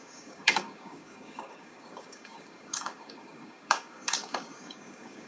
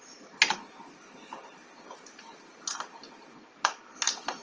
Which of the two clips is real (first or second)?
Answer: second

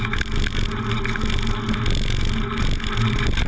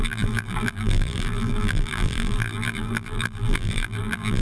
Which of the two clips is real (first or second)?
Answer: first